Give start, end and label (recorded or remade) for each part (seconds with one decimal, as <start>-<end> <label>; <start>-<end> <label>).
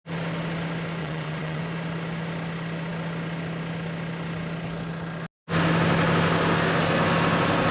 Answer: 0.0-1.0 recorded; 1.0-1.6 remade; 1.6-7.7 recorded